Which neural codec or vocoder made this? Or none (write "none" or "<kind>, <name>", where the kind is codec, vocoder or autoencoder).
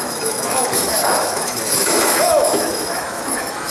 autoencoder, DAC-VAE